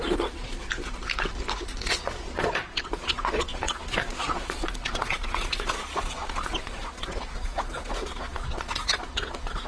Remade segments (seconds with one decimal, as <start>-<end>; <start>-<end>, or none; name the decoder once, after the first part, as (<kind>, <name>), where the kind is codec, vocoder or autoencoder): 0.0-0.6 (vocoder, Vocos); 1.8-9.7